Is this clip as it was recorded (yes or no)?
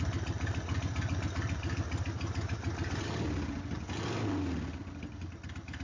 yes